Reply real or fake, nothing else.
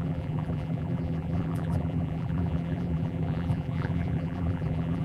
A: fake